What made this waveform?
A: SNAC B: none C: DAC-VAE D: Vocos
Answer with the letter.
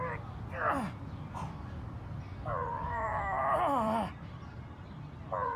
B